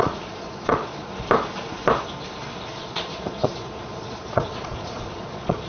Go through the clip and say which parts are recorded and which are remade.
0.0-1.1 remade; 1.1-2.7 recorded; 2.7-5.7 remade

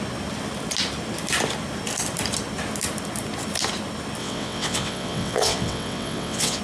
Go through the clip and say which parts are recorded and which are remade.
0.0-4.2 recorded; 4.2-6.6 remade

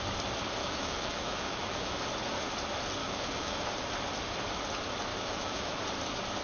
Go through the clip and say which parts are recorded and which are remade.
0.0-0.6 recorded; 0.6-2.0 remade; 2.0-3.0 recorded; 3.0-3.7 remade; 3.7-5.1 recorded; 5.1-5.8 remade; 5.8-6.4 recorded

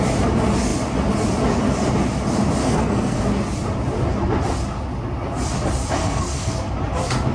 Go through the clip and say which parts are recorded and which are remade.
0.0-2.6 recorded; 2.6-3.2 remade; 3.2-6.0 recorded; 6.0-6.7 remade; 6.7-7.3 recorded